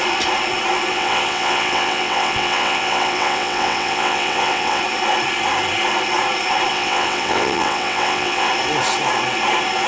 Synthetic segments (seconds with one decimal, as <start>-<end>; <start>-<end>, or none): 0.9-4.8; 6.7-8.5